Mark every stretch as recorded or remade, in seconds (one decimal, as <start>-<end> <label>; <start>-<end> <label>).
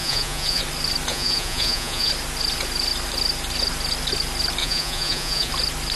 0.0-0.6 remade; 0.6-1.1 recorded; 1.1-2.1 remade; 2.1-4.6 recorded; 4.6-5.5 remade; 5.5-6.0 recorded